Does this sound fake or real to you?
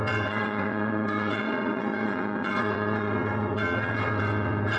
fake